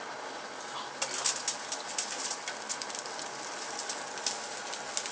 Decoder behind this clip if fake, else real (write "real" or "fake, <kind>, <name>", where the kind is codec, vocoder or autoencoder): real